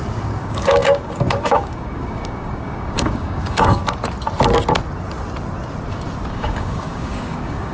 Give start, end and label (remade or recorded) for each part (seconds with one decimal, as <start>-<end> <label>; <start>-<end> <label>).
0.0-3.8 remade; 3.8-6.3 recorded; 6.3-7.7 remade